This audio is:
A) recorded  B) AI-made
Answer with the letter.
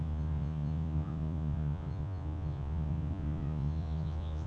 B